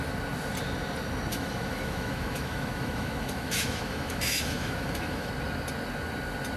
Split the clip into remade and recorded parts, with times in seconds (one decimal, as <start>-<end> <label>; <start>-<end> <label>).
0.0-1.3 recorded; 1.3-5.3 remade; 5.3-6.6 recorded

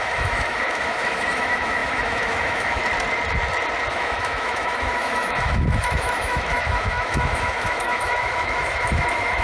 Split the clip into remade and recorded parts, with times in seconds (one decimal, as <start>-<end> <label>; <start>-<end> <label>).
0.0-2.8 remade; 2.8-3.9 recorded; 3.9-9.4 remade

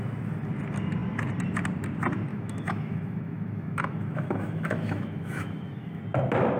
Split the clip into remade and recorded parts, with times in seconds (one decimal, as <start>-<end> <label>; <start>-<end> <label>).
0.0-2.3 recorded; 2.3-6.0 remade; 6.0-6.6 recorded

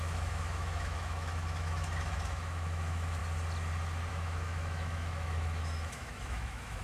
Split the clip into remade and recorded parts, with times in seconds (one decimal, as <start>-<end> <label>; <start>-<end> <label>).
0.0-3.2 remade; 3.2-4.1 recorded; 4.1-6.8 remade

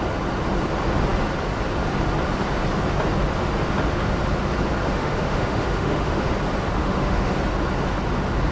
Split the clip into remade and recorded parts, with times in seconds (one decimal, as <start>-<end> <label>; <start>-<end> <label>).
0.0-4.8 recorded; 4.8-6.3 remade; 6.3-6.8 recorded; 6.8-7.3 remade; 7.3-8.5 recorded

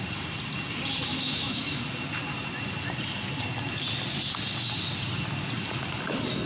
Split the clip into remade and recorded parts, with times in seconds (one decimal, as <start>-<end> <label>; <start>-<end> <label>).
0.0-1.1 recorded; 1.1-1.8 remade; 1.8-6.5 recorded

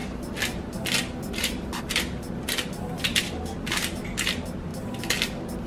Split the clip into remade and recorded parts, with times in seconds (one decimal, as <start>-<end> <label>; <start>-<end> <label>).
0.0-5.7 recorded